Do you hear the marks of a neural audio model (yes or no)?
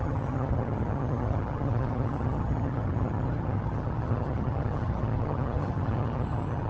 yes